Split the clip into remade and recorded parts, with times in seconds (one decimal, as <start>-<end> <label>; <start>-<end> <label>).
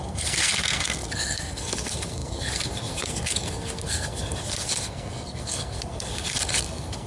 0.0-7.1 remade